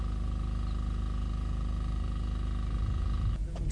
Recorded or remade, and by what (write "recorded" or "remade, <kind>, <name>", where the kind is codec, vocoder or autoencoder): recorded